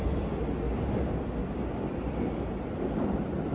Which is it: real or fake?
real